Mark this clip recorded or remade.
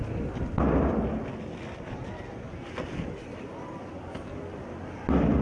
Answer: recorded